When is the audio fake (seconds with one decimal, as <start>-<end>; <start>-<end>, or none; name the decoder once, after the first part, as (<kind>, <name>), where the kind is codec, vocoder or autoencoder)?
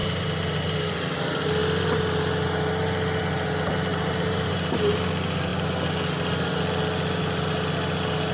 0.0-1.1 (vocoder, BigVGAN v2); 3.9-4.9